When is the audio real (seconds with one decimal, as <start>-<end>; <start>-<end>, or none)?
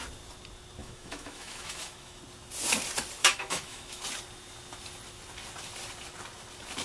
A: 0.0-0.8; 2.2-3.2; 4.0-6.8